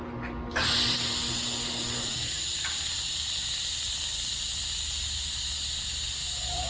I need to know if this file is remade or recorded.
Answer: recorded